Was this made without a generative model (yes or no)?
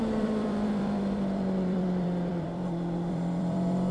no